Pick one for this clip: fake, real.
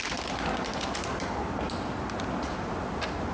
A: fake